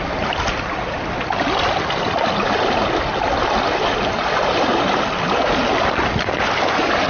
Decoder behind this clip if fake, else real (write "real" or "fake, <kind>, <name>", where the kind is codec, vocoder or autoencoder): real